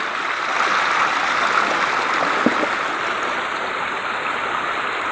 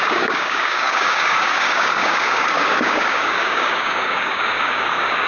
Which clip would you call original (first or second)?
first